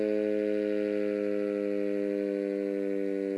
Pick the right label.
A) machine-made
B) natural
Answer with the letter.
B